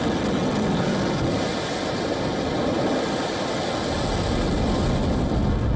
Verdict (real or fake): real